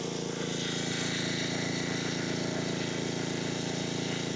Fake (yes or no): no